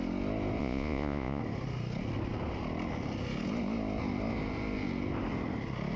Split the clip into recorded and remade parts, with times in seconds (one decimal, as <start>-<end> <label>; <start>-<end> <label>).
0.0-0.6 recorded; 0.6-1.4 remade; 1.4-6.0 recorded